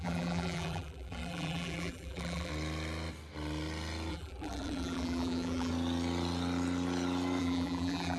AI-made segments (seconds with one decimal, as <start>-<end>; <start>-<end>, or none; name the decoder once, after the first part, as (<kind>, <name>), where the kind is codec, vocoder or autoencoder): 0.0-2.5 (vocoder, BigVGAN v2); 4.1-5.7; 7.4-8.2